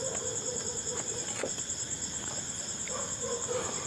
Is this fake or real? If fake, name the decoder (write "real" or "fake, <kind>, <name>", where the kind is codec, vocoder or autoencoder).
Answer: real